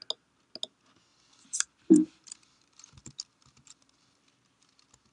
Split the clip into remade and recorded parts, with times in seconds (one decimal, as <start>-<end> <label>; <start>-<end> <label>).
0.0-1.1 recorded; 1.1-4.2 remade; 4.2-5.1 recorded